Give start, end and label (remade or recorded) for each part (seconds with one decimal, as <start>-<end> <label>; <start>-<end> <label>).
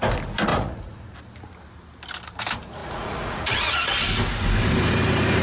0.0-0.5 recorded; 0.5-1.2 remade; 1.2-2.8 recorded; 2.8-3.7 remade; 3.7-5.4 recorded